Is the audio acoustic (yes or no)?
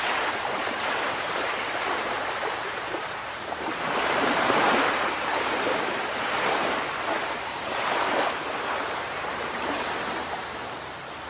no